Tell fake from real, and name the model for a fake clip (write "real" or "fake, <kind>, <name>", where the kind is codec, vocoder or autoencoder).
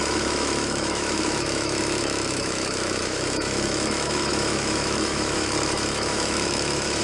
fake, autoencoder, DAC-VAE